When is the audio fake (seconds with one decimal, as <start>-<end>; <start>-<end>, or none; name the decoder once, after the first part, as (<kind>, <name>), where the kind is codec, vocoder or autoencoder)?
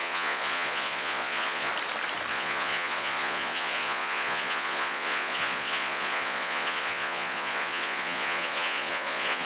0.0-1.7 (vocoder, Vocos); 2.3-9.4